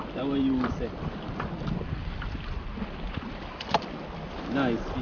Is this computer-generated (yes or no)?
no